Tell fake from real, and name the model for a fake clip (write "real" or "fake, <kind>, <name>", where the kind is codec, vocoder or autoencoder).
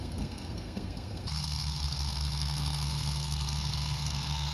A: fake, codec, SNAC